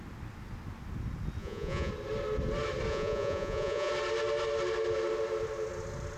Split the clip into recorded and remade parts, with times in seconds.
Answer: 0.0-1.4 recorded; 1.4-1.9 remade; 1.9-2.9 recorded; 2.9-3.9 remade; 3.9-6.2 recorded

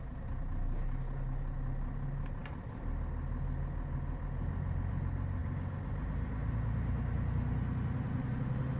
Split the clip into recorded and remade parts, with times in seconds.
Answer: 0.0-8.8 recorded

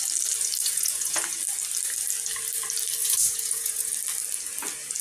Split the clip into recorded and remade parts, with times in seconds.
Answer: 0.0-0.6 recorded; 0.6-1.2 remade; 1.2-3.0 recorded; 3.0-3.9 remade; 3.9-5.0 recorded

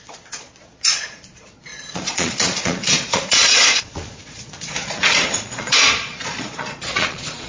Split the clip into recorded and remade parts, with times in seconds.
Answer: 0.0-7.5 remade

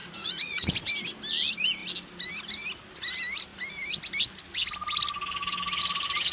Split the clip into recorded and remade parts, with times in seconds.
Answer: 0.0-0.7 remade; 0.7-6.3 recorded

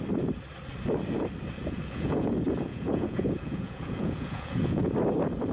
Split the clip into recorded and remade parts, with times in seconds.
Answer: 0.0-1.6 recorded; 1.6-4.9 remade; 4.9-5.5 recorded